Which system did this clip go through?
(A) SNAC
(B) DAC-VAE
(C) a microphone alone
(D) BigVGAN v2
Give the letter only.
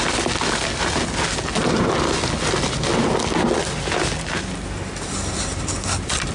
C